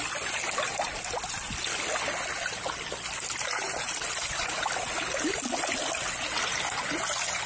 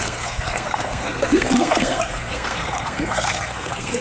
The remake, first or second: second